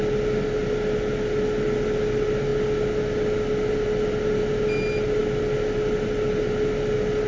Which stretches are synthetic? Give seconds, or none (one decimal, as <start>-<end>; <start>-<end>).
none